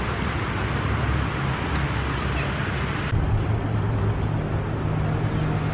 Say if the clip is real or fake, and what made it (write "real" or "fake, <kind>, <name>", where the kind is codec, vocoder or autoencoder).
real